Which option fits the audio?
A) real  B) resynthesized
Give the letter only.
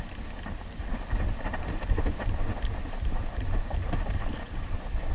A